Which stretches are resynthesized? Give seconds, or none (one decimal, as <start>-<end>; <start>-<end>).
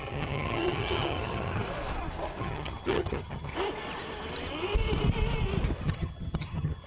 0.0-1.6; 2.4-3.5; 5.8-6.9